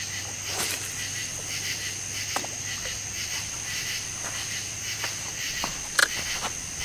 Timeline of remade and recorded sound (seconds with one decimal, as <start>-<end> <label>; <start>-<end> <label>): 0.0-6.8 recorded